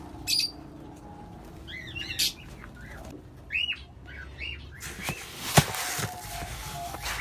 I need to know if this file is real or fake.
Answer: real